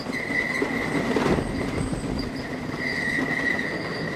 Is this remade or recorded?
recorded